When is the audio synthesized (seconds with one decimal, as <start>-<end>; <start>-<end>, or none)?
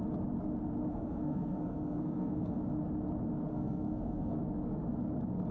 0.9-2.6; 3.5-4.4